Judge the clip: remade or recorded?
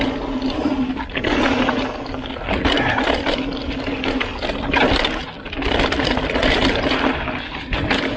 recorded